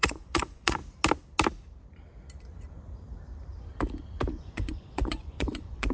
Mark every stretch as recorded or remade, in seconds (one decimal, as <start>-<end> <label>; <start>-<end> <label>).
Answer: 0.0-0.8 remade; 0.8-4.3 recorded; 4.3-5.9 remade